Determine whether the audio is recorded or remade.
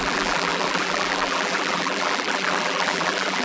remade